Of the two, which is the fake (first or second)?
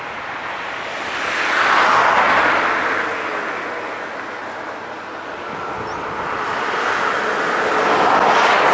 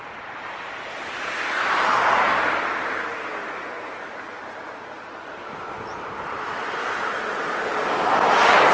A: second